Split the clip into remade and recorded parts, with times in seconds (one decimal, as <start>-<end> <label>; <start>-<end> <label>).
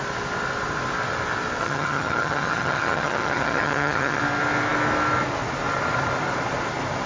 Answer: 0.0-1.6 recorded; 1.6-4.2 remade; 4.2-7.1 recorded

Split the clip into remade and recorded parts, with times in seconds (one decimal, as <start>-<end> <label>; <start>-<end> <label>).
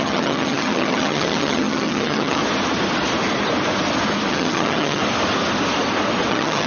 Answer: 0.0-2.4 remade; 2.4-4.3 recorded; 4.3-5.0 remade; 5.0-6.3 recorded; 6.3-6.7 remade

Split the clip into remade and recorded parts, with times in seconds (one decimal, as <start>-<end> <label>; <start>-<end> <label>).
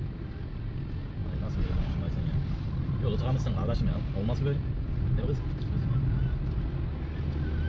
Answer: 0.0-7.7 recorded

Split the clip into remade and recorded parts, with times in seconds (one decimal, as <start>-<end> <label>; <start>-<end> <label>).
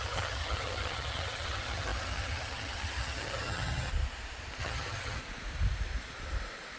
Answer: 0.0-3.9 remade; 3.9-4.6 recorded; 4.6-5.2 remade; 5.2-6.8 recorded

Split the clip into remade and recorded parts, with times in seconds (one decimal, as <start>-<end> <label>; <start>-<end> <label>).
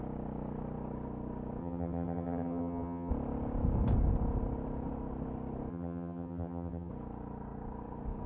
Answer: 0.0-1.6 recorded; 1.6-3.1 remade; 3.1-5.7 recorded; 5.7-6.9 remade; 6.9-8.3 recorded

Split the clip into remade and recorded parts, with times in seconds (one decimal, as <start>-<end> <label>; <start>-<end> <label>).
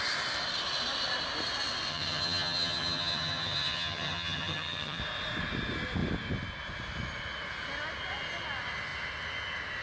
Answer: 0.0-1.9 recorded; 1.9-5.0 remade; 5.0-9.8 recorded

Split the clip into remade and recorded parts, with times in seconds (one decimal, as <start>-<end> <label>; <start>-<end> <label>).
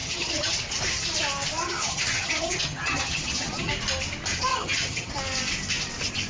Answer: 0.0-0.5 remade; 0.5-1.6 recorded; 1.6-3.7 remade; 3.7-4.5 recorded; 4.5-5.1 remade; 5.1-6.3 recorded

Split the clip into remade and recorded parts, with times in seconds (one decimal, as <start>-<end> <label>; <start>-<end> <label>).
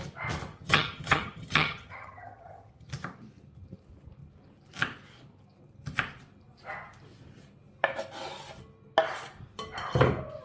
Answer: 0.0-0.5 recorded; 0.5-2.9 remade; 2.9-10.4 recorded